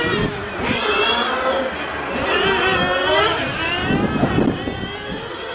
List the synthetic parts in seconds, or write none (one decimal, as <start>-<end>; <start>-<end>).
none